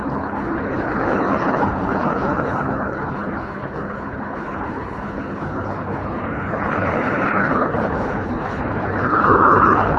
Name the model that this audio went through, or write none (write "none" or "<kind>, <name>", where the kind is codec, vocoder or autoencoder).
codec, HILCodec